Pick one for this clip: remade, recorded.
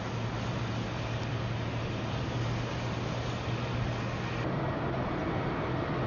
recorded